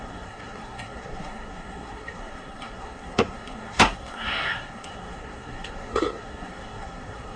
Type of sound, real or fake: fake